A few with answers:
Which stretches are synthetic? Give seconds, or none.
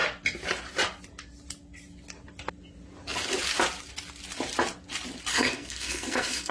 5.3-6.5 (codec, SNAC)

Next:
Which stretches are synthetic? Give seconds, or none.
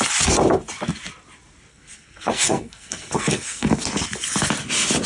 1.7-3.7 (codec, SNAC)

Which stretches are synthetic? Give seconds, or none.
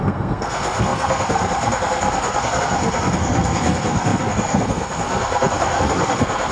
0.0-6.5 (codec, SNAC)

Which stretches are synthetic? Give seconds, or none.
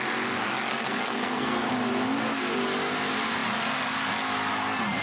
0.7-1.7 (codec, SNAC)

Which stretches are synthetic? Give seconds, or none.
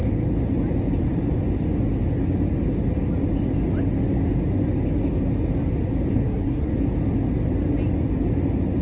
6.1-6.7 (codec, SNAC)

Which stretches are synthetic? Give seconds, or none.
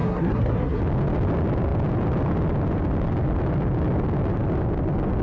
0.0-0.8 (codec, SNAC)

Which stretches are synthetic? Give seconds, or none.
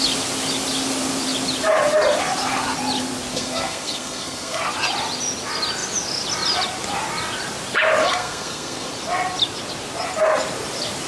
3.3-4.6 (codec, SNAC); 8.0-8.9